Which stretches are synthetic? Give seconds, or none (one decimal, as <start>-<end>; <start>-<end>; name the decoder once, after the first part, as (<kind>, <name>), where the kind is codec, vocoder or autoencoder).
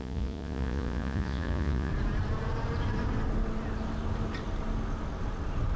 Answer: 0.0-1.9 (vocoder, Vocos)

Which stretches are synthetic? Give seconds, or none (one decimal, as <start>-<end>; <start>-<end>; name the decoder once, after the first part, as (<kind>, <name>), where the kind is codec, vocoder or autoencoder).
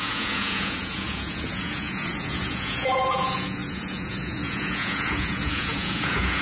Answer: 0.0-6.4 (vocoder, Vocos)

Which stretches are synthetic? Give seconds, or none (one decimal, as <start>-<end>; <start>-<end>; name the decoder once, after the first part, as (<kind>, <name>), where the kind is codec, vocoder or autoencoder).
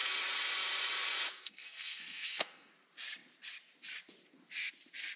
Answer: 1.3-2.7 (codec, SNAC)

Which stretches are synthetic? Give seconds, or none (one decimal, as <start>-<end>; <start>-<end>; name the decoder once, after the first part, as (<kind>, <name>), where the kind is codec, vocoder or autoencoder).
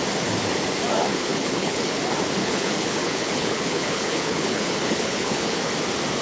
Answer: 1.1-2.0 (codec, HILCodec); 2.4-5.7